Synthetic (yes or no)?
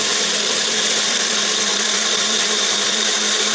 yes